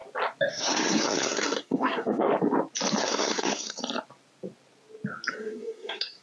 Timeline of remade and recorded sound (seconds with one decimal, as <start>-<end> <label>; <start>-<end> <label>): 0.0-0.5 recorded; 0.5-2.3 remade; 2.3-3.0 recorded; 3.0-3.8 remade; 3.8-5.3 recorded; 5.3-6.2 remade